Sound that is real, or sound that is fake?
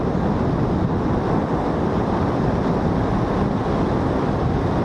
real